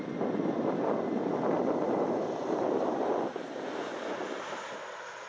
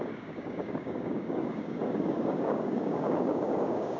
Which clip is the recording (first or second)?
first